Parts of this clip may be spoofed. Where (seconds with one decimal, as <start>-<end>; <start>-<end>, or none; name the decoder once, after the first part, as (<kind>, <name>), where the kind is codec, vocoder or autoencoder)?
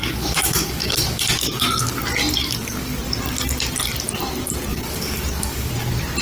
0.0-2.0 (codec, DAC); 2.4-3.0; 4.7-5.7